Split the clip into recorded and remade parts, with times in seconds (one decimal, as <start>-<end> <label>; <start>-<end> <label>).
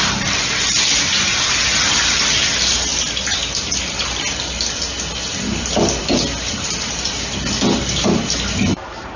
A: 0.0-9.2 recorded